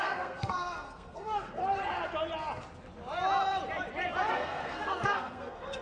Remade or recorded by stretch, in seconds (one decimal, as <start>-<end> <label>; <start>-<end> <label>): 0.0-1.6 remade; 1.6-4.3 recorded; 4.3-5.8 remade